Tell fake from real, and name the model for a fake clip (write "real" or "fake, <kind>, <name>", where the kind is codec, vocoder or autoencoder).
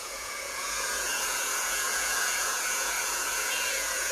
fake, vocoder, Vocos